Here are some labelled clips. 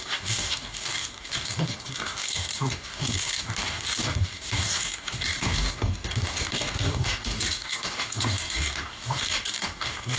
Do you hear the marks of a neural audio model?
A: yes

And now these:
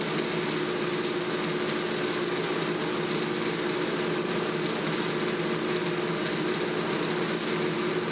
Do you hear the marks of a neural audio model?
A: no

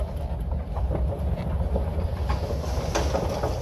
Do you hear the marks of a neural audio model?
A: no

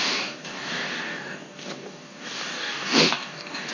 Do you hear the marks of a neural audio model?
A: yes